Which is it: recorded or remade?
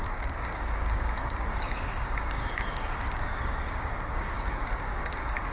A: remade